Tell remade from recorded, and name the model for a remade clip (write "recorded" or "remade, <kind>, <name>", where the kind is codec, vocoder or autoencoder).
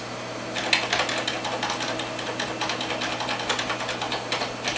recorded